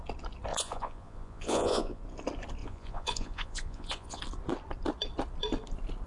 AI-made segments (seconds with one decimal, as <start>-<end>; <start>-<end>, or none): 0.5-2.0; 2.6-4.2